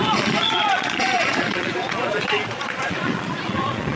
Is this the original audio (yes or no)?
no